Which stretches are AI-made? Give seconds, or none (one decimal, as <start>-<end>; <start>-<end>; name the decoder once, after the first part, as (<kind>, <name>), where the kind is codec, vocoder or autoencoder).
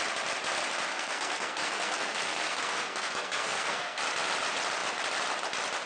0.9-4.0 (codec, SNAC)